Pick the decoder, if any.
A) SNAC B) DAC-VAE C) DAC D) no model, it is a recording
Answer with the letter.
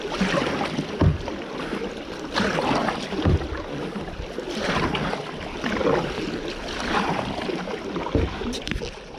D